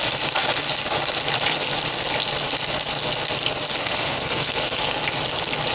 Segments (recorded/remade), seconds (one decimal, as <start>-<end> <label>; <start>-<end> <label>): 0.0-3.8 recorded; 3.8-5.0 remade; 5.0-5.7 recorded